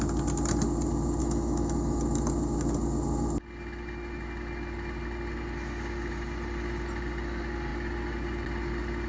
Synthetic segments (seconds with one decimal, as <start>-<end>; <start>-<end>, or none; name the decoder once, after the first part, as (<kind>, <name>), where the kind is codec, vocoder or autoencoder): 1.2-2.0 (autoencoder, DAC-VAE)